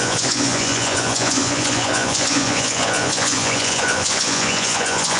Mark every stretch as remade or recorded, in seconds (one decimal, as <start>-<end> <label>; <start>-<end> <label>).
0.0-5.2 remade